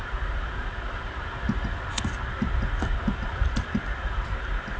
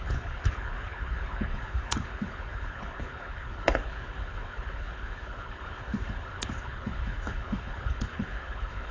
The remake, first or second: second